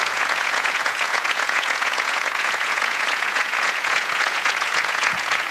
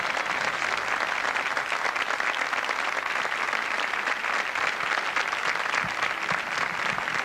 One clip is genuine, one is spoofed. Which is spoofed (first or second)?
first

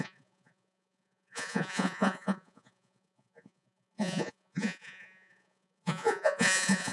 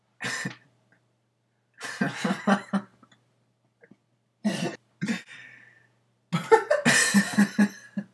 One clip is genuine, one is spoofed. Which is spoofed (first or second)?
first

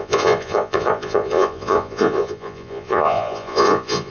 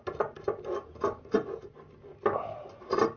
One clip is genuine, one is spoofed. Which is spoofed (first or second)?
first